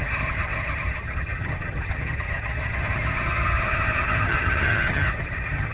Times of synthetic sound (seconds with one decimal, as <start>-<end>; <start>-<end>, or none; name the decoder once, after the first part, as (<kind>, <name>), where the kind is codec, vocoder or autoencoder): 0.0-5.7 (vocoder, HiFi-GAN)